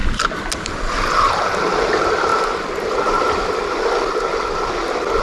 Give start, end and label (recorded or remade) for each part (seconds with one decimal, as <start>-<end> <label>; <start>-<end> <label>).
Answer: 0.0-5.2 recorded